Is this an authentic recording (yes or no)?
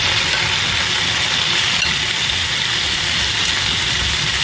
yes